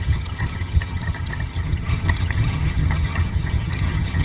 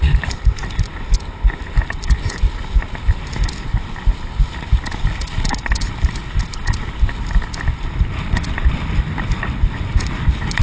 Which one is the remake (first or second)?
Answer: first